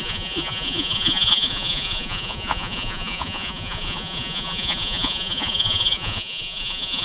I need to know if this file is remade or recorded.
remade